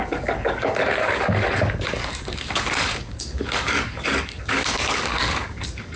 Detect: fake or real fake